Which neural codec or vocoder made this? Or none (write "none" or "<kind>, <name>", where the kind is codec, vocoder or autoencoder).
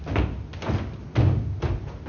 none